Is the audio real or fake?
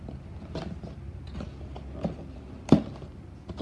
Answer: real